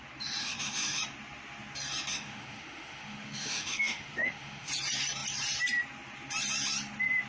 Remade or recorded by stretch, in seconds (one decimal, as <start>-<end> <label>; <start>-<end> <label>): 0.0-0.4 recorded; 0.4-1.0 remade; 1.0-2.1 recorded; 2.1-4.7 remade; 4.7-7.3 recorded